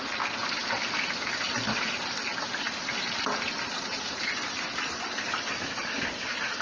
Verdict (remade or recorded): recorded